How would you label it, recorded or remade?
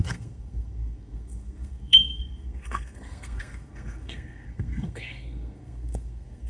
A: remade